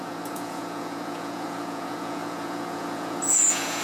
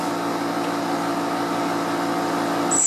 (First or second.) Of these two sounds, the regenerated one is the first